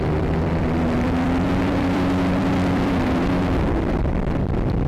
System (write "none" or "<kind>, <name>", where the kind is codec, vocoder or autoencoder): vocoder, BigVGAN v2